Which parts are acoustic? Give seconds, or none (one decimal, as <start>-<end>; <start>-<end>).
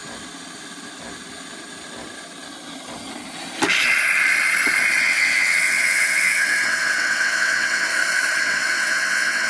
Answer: 0.0-5.0; 7.9-8.4